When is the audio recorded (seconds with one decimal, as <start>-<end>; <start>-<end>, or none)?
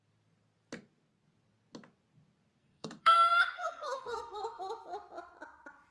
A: 0.0-2.6; 4.6-5.9